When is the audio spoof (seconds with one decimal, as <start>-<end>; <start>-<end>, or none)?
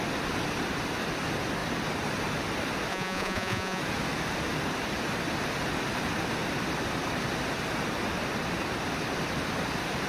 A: 2.9-3.8